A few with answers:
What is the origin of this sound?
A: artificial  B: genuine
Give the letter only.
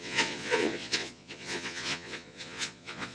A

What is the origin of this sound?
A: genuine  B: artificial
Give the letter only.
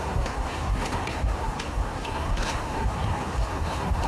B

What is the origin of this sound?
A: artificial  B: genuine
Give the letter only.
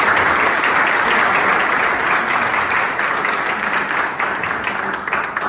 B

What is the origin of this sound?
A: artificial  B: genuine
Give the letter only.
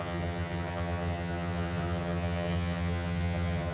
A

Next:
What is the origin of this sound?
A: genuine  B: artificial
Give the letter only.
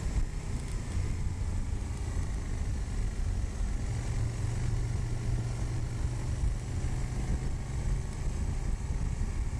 A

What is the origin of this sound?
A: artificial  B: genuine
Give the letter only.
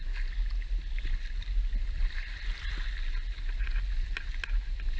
B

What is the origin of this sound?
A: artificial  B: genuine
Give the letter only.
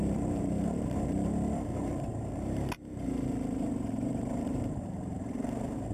A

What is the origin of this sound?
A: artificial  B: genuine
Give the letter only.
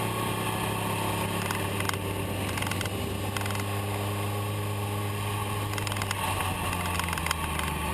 B